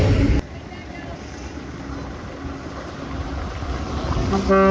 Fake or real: real